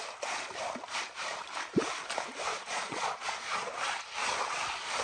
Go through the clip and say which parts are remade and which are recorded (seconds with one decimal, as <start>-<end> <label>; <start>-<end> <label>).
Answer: 0.0-2.5 recorded; 2.5-3.7 remade; 3.7-5.0 recorded